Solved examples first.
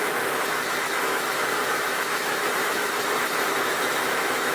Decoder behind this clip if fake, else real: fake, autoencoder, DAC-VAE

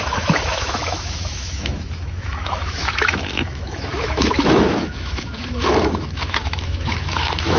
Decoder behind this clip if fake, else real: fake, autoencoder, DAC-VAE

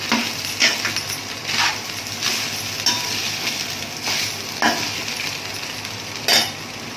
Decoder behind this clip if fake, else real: real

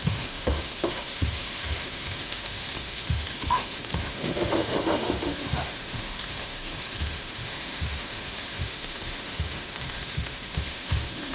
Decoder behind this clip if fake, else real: fake, autoencoder, DAC-VAE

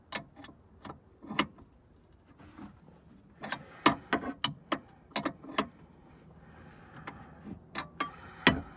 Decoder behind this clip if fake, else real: real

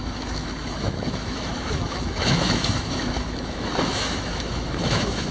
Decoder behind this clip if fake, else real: fake, autoencoder, DAC-VAE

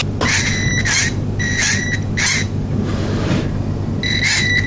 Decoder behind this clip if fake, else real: real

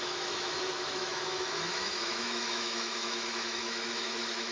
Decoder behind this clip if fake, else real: fake, autoencoder, DAC-VAE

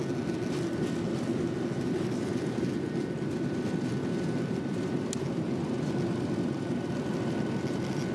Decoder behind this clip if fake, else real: real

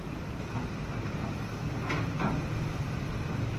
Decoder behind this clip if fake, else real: real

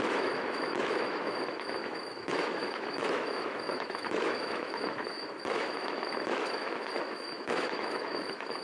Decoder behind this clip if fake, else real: fake, autoencoder, DAC-VAE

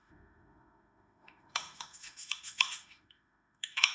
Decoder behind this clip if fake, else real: fake, autoencoder, DAC-VAE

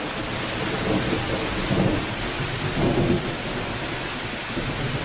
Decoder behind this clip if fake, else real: real